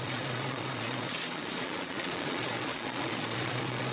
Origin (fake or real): fake